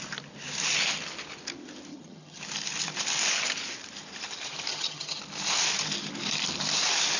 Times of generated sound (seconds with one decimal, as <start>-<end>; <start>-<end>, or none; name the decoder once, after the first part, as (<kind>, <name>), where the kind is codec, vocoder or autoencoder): 1.9-2.4 (vocoder, HiFi-GAN); 4.7-5.2